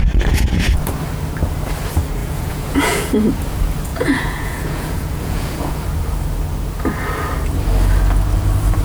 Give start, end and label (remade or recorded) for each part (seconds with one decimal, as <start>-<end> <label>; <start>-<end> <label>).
0.0-2.2 recorded; 2.2-3.0 remade; 3.0-3.9 recorded; 3.9-5.8 remade; 5.8-8.8 recorded